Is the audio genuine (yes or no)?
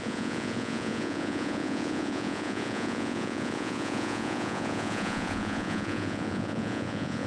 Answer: no